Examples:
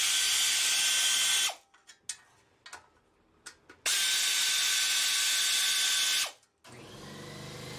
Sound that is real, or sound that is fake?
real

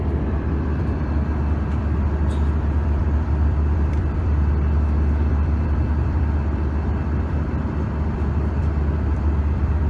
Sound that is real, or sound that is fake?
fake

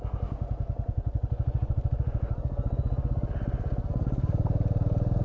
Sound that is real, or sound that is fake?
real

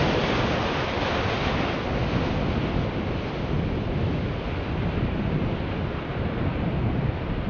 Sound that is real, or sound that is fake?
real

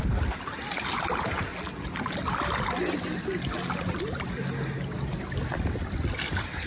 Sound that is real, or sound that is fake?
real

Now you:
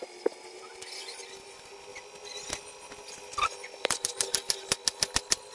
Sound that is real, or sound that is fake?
real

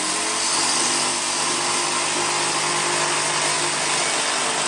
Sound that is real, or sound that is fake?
real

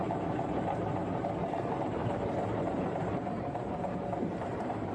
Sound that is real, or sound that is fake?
fake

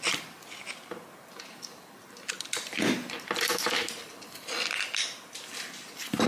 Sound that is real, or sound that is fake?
real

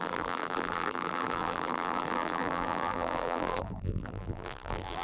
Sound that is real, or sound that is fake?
fake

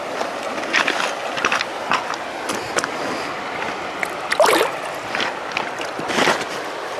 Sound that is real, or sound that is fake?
real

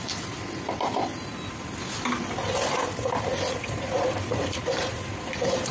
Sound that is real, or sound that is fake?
real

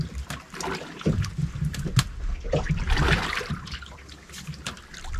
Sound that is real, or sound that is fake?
real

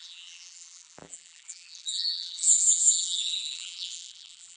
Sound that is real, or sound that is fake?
fake